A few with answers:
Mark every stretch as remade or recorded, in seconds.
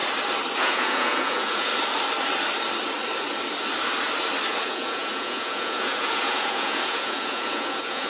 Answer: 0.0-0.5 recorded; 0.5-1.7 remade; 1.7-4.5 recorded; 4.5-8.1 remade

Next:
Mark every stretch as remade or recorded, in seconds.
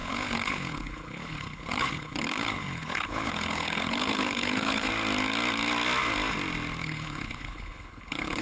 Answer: 0.0-4.9 remade; 4.9-6.8 recorded; 6.8-8.4 remade